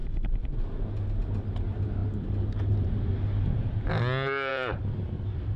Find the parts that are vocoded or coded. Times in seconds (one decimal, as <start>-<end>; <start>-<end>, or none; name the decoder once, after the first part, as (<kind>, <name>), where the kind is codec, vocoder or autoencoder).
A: 4.5-5.6 (vocoder, BigVGAN v2)